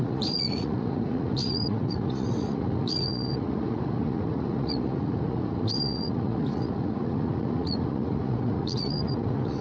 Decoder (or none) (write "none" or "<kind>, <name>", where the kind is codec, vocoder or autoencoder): vocoder, Vocos